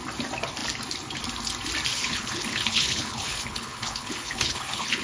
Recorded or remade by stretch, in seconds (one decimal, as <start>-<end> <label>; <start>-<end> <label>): 0.0-1.9 recorded; 1.9-5.0 remade